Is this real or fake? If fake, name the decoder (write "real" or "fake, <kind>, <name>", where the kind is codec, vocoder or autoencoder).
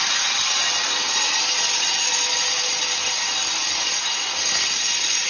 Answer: real